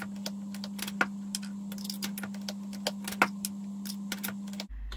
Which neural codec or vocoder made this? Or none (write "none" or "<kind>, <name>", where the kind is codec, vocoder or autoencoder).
none